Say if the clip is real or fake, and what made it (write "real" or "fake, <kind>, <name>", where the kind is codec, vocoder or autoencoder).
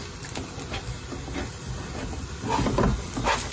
real